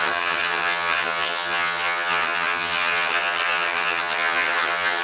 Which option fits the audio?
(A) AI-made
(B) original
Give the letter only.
A